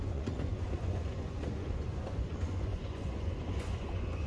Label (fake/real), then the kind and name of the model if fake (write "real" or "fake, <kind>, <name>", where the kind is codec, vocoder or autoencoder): fake, vocoder, Vocos